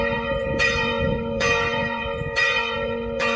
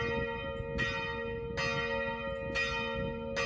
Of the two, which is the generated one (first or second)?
first